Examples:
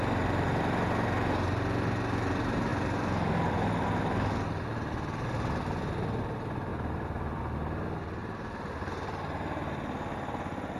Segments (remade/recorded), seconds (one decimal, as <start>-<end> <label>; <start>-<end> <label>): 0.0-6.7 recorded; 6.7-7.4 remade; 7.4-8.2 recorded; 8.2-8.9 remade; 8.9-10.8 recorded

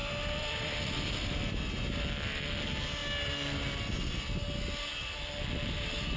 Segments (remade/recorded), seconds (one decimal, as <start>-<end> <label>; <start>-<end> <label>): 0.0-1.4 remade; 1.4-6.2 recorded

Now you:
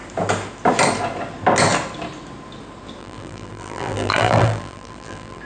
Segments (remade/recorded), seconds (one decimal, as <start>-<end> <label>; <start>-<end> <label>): 0.0-3.0 recorded; 3.0-5.4 remade